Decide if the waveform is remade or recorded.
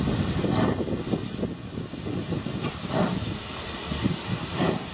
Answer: recorded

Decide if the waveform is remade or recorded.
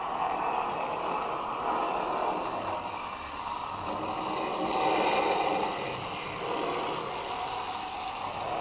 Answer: recorded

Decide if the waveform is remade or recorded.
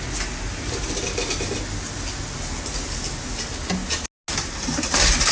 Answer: recorded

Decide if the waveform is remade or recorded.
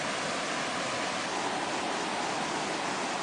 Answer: recorded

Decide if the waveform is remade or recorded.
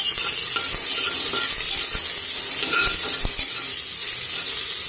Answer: recorded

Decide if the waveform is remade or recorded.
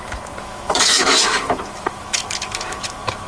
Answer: remade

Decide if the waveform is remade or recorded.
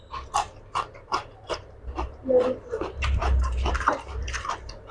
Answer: remade